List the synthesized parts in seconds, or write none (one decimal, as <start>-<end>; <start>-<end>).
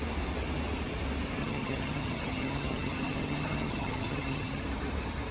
1.4-4.6